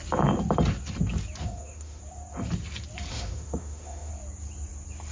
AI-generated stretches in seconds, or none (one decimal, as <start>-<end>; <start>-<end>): 1.4-2.0; 3.1-4.1